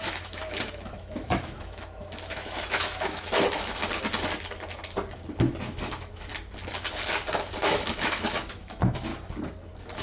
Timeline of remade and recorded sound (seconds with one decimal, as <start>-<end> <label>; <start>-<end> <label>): 0.0-3.8 remade; 3.8-5.7 recorded; 5.7-6.3 remade; 6.3-7.6 recorded; 7.6-9.1 remade; 9.1-10.0 recorded

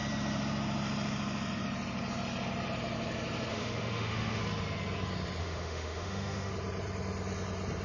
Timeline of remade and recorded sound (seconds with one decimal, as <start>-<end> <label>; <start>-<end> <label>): 0.0-3.5 recorded; 3.5-4.4 remade; 4.4-5.4 recorded; 5.4-6.5 remade; 6.5-7.8 recorded

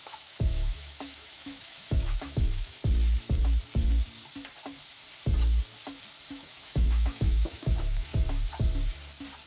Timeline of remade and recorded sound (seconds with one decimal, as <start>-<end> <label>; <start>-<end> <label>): 0.0-2.8 remade; 2.8-6.3 recorded; 6.3-8.1 remade; 8.1-9.5 recorded

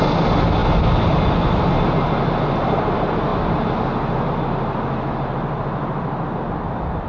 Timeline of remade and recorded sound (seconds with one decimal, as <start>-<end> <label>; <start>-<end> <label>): 0.0-7.1 recorded

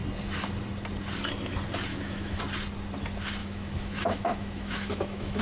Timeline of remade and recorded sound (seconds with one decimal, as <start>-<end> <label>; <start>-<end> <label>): 0.0-1.9 recorded; 1.9-2.4 remade; 2.4-3.4 recorded; 3.4-5.4 remade

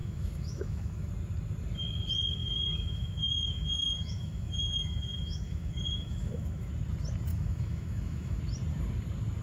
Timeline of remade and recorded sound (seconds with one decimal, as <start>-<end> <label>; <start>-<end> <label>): 0.0-1.1 remade; 1.1-2.4 recorded; 2.4-6.7 remade; 6.7-7.3 recorded; 7.3-8.4 remade; 8.4-9.4 recorded

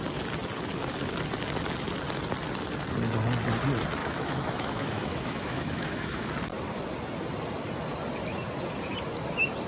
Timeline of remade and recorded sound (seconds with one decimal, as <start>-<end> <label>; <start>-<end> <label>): 0.0-4.0 recorded; 4.0-6.3 remade; 6.3-9.7 recorded